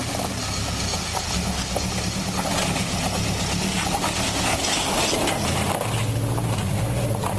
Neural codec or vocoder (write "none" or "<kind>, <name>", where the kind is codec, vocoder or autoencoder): none